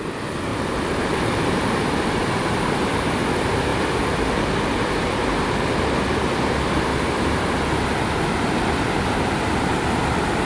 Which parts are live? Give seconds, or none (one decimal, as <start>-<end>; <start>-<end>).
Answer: 0.0-0.5; 2.4-3.7; 6.0-6.9; 7.4-10.4